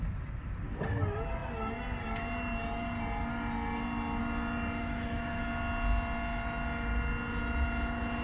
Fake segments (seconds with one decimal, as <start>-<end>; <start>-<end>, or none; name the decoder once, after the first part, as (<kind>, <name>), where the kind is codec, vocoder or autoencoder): 4.8-5.4 (autoencoder, DAC-VAE)